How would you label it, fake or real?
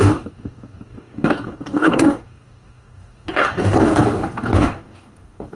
fake